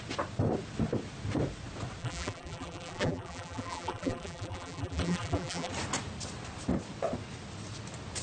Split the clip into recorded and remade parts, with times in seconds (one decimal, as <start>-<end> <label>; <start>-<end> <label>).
0.0-2.0 recorded; 2.0-5.7 remade; 5.7-8.2 recorded